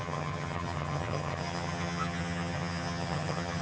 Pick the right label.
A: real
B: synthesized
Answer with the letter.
B